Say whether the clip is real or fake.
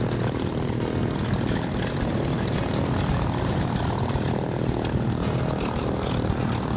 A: real